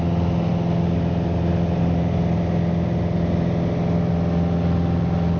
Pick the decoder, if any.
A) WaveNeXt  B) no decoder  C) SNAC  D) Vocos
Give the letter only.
B